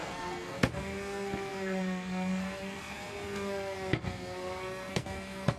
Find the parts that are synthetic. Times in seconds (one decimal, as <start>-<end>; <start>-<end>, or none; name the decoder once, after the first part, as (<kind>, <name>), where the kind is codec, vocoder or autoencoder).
0.0-5.6 (codec, SNAC)